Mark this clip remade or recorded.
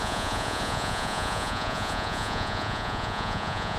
remade